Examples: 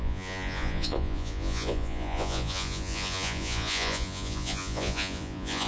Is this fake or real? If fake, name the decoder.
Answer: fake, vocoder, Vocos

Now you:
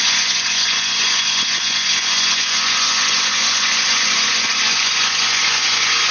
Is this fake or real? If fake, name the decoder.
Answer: fake, vocoder, Vocos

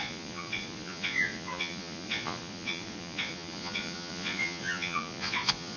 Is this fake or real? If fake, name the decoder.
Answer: fake, vocoder, Vocos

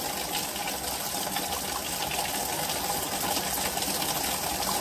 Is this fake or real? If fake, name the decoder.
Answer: real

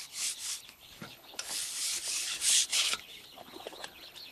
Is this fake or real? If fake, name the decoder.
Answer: fake, codec, HILCodec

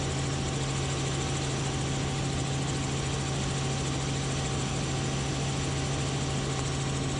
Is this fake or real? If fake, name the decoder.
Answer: real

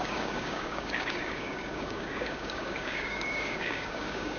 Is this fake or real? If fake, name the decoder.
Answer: fake, codec, DAC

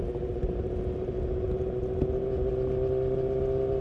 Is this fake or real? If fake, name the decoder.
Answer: real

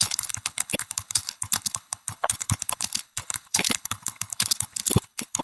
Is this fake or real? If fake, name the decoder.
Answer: fake, codec, HILCodec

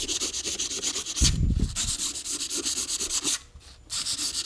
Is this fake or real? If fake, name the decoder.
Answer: real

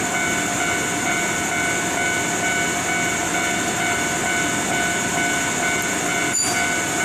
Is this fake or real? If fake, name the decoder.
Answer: real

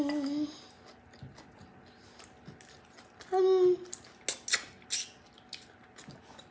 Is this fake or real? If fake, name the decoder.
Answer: real